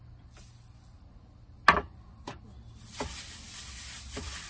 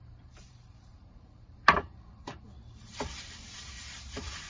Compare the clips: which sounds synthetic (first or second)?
second